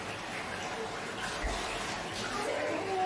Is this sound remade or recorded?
recorded